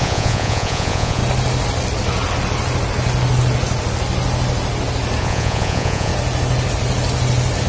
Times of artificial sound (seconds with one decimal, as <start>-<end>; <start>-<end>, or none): 0.0-1.2; 5.2-6.1